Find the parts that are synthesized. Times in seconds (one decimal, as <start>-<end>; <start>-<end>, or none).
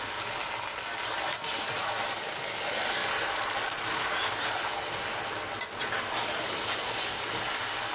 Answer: none